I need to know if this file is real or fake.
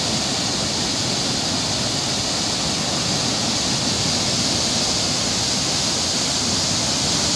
real